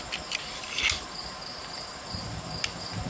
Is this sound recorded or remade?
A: recorded